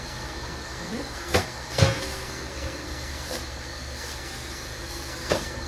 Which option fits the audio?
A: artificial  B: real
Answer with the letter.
A